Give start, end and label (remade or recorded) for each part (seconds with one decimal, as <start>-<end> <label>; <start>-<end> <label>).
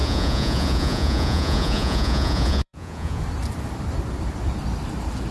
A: 0.0-3.2 remade; 3.2-5.3 recorded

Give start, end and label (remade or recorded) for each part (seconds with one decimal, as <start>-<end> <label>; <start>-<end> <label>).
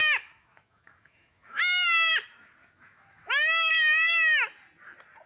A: 0.0-2.1 remade; 2.1-2.6 recorded; 2.6-3.7 remade; 3.7-5.3 recorded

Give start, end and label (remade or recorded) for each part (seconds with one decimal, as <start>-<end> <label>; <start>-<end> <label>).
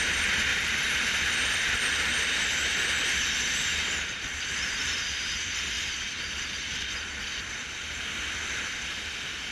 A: 0.0-3.7 recorded; 3.7-7.2 remade; 7.2-9.5 recorded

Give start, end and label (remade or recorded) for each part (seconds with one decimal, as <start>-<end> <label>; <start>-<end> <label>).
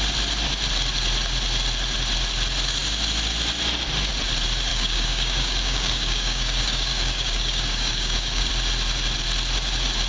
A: 0.0-4.7 recorded; 4.7-8.5 remade; 8.5-10.1 recorded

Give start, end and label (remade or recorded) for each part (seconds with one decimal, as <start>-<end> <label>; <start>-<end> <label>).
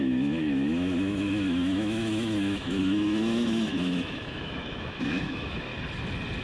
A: 0.0-5.7 remade; 5.7-6.4 recorded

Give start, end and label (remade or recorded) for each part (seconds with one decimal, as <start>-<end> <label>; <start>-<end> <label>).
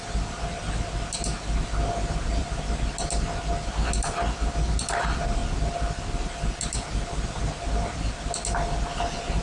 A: 0.0-9.4 recorded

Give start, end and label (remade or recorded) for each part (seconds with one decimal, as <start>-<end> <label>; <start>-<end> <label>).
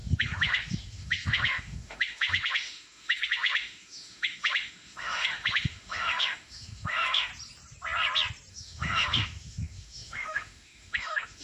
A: 0.0-7.3 remade; 7.3-8.5 recorded; 8.5-11.4 remade